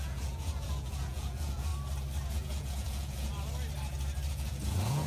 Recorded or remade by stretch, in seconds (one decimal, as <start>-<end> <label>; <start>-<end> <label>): 0.0-1.7 remade; 1.7-2.3 recorded; 2.3-3.3 remade; 3.3-4.3 recorded; 4.3-5.1 remade